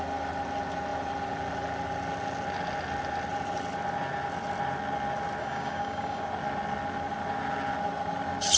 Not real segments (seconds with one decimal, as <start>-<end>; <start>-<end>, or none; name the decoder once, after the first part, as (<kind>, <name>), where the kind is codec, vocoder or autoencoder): 5.4-6.2 (codec, DAC)